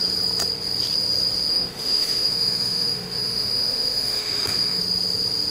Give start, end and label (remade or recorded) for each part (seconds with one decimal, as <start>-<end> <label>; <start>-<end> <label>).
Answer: 0.0-1.5 recorded; 1.5-4.8 remade; 4.8-5.5 recorded